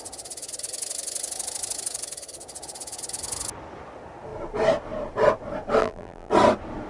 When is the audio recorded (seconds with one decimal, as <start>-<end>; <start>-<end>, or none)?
0.0-5.8; 6.3-6.9

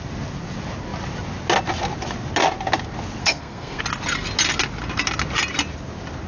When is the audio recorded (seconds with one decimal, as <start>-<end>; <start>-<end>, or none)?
0.0-3.2; 3.8-6.3

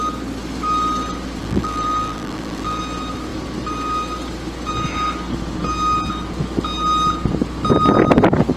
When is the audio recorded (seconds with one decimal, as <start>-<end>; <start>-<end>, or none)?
0.0-1.4; 2.8-8.6

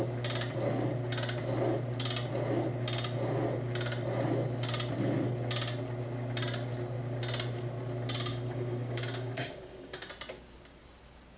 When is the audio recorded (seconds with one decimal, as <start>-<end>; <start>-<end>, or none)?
0.0-8.3; 10.1-11.4